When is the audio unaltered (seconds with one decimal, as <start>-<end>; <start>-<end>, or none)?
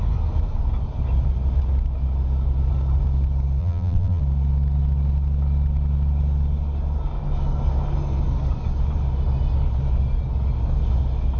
0.0-3.6; 4.2-11.4